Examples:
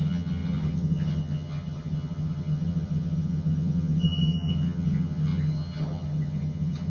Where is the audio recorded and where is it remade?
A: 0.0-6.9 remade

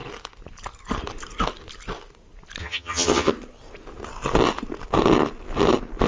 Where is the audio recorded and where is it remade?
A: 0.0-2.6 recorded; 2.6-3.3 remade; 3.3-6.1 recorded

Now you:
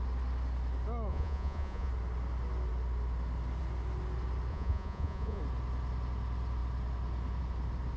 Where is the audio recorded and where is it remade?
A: 0.0-1.1 recorded; 1.1-1.9 remade; 1.9-4.5 recorded; 4.5-5.4 remade; 5.4-8.0 recorded

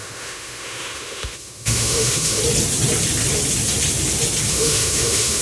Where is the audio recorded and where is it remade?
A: 0.0-2.4 remade; 2.4-4.5 recorded; 4.5-5.4 remade